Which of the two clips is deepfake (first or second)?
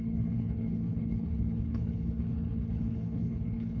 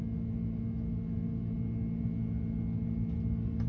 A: first